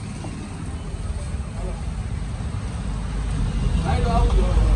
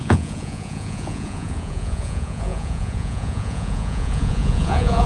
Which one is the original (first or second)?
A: first